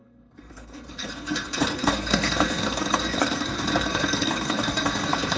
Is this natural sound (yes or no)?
no